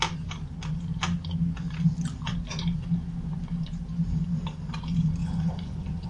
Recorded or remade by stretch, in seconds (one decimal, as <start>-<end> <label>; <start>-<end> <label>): 0.0-5.2 recorded; 5.2-6.1 remade